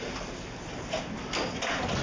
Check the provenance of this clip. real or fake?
real